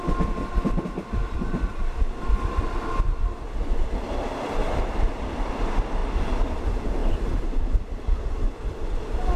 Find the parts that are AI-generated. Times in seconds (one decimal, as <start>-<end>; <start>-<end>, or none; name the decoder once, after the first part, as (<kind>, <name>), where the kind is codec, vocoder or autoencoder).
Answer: 1.7-2.3 (vocoder, BigVGAN v2); 4.6-5.5